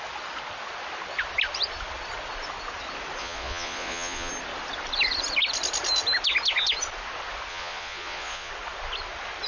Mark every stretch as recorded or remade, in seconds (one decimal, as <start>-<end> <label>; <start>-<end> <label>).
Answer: 0.0-3.2 recorded; 3.2-4.3 remade; 4.3-7.5 recorded; 7.5-8.5 remade; 8.5-9.5 recorded